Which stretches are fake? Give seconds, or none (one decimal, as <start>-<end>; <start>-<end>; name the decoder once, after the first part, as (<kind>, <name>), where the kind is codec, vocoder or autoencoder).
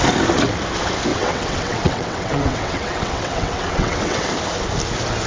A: 1.1-4.3 (vocoder, WaveNeXt)